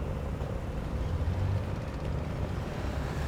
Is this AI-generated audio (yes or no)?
yes